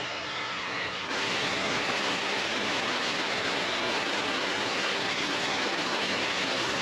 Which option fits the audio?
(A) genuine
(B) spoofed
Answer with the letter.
B